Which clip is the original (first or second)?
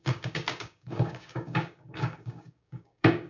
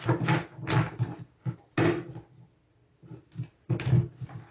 second